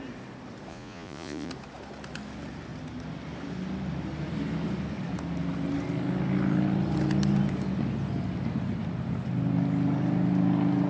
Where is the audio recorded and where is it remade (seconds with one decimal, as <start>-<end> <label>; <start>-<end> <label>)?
0.0-0.7 recorded; 0.7-1.5 remade; 1.5-10.9 recorded